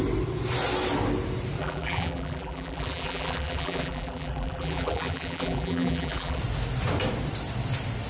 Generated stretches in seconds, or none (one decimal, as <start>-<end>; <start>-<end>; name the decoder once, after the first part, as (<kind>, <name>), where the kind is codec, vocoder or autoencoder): 1.6-6.4 (vocoder, BigVGAN v2)